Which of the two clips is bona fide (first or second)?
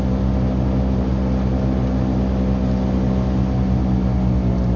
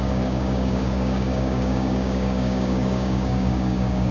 first